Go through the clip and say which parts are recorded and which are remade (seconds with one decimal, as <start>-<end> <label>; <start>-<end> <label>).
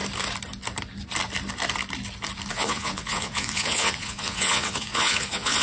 0.0-2.5 recorded; 2.5-5.6 remade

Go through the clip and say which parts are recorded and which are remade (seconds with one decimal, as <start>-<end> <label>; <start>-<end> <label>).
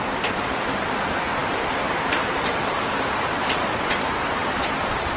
0.0-1.4 recorded; 1.4-4.5 remade; 4.5-5.2 recorded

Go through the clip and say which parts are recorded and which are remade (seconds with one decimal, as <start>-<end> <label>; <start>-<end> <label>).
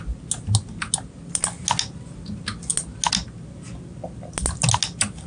0.0-5.3 recorded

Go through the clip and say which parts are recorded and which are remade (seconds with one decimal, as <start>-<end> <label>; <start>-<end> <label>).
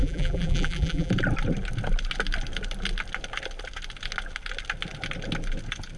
0.0-1.1 remade; 1.1-6.0 recorded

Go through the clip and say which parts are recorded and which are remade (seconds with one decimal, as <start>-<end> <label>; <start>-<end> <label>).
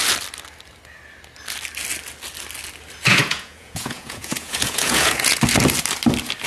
0.0-3.1 recorded; 3.1-5.4 remade; 5.4-6.5 recorded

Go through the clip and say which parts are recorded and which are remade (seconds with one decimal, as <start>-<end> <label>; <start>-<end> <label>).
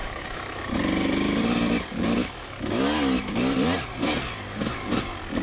0.0-0.6 remade; 0.6-2.2 recorded; 2.2-2.8 remade; 2.8-5.4 recorded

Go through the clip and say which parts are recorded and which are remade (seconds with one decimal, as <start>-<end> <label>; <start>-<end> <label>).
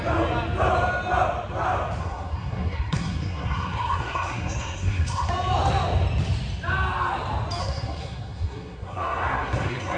0.0-2.0 recorded; 2.0-5.3 remade; 5.3-7.6 recorded; 7.6-10.0 remade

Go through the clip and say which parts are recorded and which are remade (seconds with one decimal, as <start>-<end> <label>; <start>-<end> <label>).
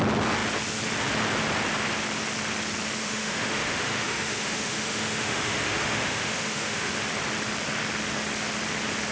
0.0-3.0 recorded; 3.0-6.9 remade; 6.9-9.1 recorded